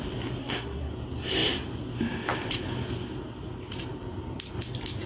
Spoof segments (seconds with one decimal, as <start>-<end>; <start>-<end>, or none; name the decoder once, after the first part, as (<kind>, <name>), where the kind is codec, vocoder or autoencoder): 0.4-0.9 (codec, SNAC)